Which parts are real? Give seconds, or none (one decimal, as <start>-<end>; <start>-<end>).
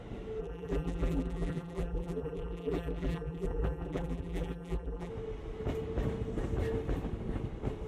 0.0-0.4; 5.1-7.9